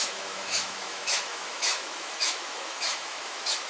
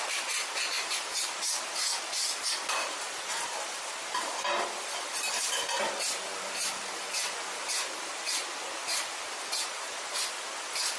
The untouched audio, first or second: second